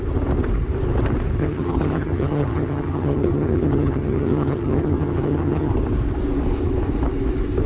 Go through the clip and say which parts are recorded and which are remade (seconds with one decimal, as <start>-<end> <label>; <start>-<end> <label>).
0.0-1.4 recorded; 1.4-5.7 remade; 5.7-7.7 recorded